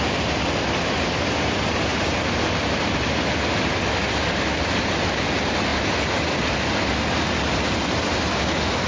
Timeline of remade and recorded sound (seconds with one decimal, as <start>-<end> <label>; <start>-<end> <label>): 0.0-8.9 recorded